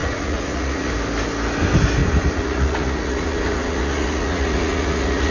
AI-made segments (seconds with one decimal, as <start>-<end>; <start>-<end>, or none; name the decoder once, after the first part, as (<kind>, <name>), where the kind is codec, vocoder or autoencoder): 0.0-0.9 (vocoder, Vocos); 2.0-5.3